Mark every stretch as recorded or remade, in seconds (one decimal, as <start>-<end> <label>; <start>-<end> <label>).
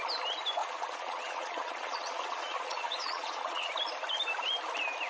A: 0.0-0.6 recorded; 0.6-3.7 remade; 3.7-5.1 recorded